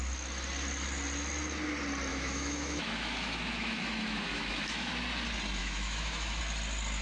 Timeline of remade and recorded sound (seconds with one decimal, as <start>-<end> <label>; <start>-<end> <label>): 0.0-2.1 recorded; 2.1-4.9 remade; 4.9-5.6 recorded; 5.6-6.4 remade; 6.4-7.0 recorded

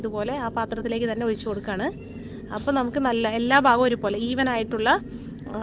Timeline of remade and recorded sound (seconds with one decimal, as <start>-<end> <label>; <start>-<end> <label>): 0.0-5.6 recorded

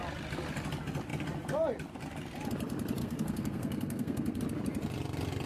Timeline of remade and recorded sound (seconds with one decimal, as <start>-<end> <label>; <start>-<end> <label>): 0.0-3.0 recorded; 3.0-4.4 remade; 4.4-5.5 recorded

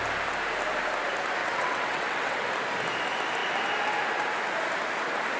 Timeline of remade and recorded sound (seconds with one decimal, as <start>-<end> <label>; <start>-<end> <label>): 0.0-1.4 recorded; 1.4-2.5 remade; 2.5-5.4 recorded

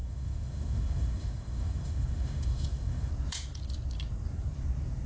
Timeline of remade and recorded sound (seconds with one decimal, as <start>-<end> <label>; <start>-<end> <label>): 0.0-3.1 remade; 3.1-5.1 recorded